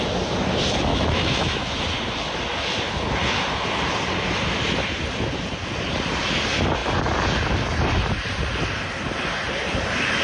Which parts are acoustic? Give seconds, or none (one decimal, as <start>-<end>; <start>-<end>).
0.0-0.9; 1.8-10.2